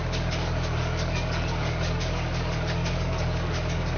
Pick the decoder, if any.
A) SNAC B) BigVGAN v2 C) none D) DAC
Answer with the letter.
D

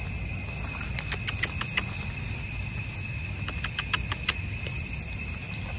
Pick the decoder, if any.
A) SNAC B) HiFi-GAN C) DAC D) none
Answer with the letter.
D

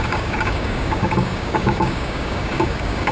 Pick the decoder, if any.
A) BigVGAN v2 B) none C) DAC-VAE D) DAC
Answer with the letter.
D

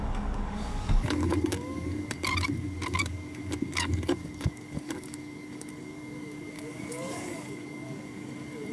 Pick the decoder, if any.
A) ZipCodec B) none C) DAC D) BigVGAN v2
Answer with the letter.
C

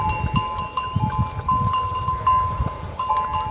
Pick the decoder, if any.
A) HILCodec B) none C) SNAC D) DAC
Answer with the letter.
B